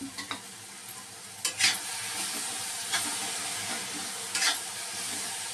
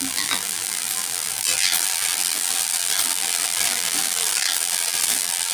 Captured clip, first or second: first